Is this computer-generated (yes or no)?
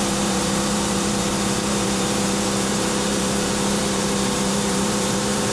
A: yes